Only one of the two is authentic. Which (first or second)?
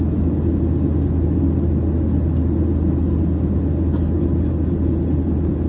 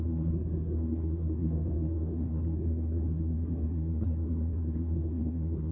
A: first